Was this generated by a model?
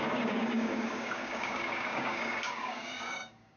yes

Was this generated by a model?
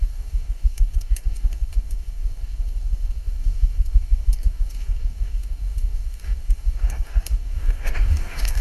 yes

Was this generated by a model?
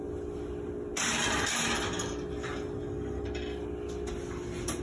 no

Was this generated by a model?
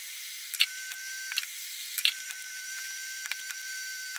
yes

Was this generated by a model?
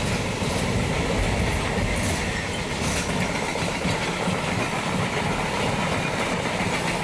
no